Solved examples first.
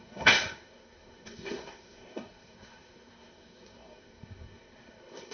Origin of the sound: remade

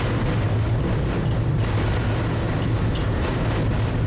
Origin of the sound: recorded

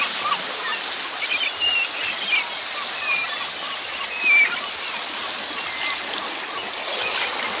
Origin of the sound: recorded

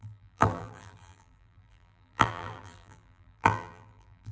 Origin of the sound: remade